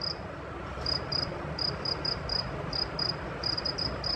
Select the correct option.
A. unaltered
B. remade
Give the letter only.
B